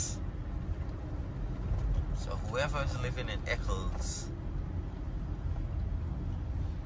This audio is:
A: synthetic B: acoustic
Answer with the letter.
B